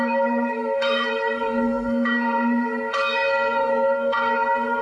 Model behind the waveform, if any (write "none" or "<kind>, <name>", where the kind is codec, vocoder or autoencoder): codec, SNAC